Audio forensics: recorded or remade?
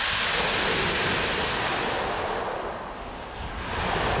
recorded